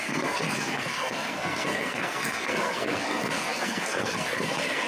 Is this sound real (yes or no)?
no